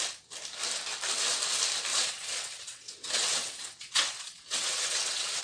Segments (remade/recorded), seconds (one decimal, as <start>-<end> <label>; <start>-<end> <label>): 0.0-1.9 recorded; 1.9-5.4 remade

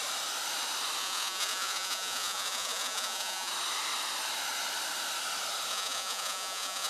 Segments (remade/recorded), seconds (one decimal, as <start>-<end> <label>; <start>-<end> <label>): 0.0-1.0 recorded; 1.0-3.5 remade; 3.5-5.7 recorded; 5.7-6.9 remade

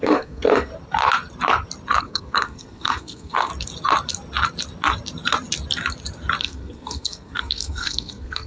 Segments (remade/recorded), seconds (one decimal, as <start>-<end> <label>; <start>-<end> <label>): 0.0-0.7 remade; 0.7-2.0 recorded; 2.0-3.5 remade; 3.5-6.4 recorded; 6.4-8.5 remade

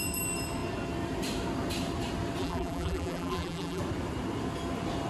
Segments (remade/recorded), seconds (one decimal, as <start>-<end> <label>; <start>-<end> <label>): 0.0-2.4 recorded; 2.4-3.8 remade; 3.8-5.1 recorded

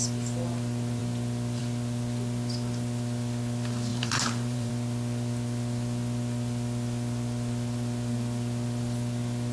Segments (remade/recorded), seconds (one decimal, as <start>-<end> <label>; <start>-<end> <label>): 0.0-3.9 recorded; 3.9-4.7 remade; 4.7-9.5 recorded

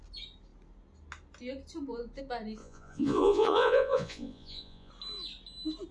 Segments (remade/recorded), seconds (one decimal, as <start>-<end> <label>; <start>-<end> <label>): 0.0-2.6 recorded; 2.6-4.9 remade; 4.9-5.9 recorded